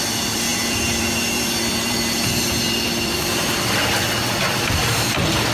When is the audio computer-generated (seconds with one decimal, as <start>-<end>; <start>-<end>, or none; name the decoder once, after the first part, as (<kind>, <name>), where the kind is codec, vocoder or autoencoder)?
0.0-5.5 (vocoder, BigVGAN v2)